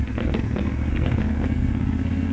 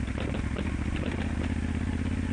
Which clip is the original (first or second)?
second